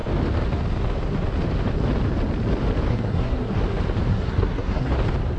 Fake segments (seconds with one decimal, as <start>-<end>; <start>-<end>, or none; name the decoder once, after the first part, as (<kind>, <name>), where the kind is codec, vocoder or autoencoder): 2.9-3.6 (codec, SNAC); 4.1-4.9